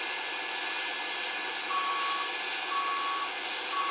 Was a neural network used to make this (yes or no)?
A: no